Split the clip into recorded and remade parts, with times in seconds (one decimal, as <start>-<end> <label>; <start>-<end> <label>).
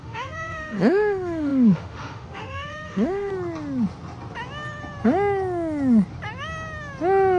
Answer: 0.0-3.3 remade; 3.3-7.4 recorded